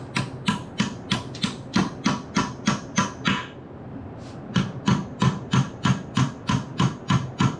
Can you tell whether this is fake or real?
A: real